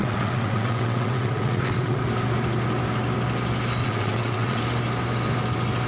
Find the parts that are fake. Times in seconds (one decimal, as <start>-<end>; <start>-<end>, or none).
0.0-2.0; 3.8-4.6